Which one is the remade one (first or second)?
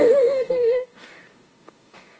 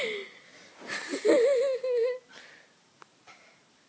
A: first